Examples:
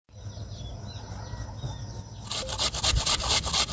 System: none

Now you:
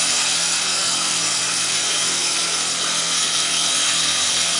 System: codec, SNAC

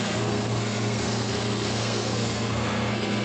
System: codec, SNAC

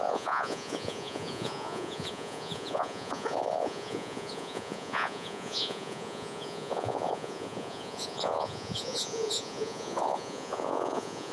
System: vocoder, Vocos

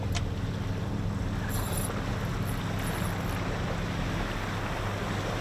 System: none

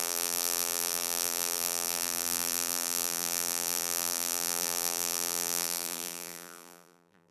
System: vocoder, BigVGAN v2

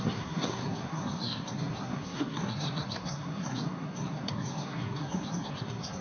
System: codec, SNAC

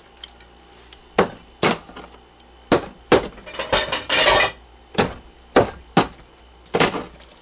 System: none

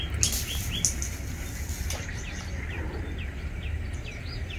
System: none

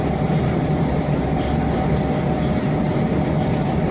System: none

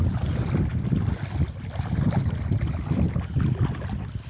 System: none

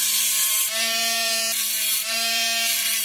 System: vocoder, BigVGAN v2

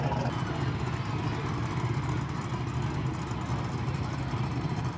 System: none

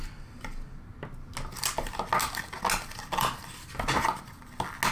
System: none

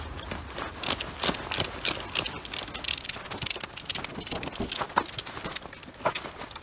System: none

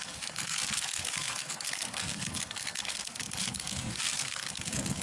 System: codec, SNAC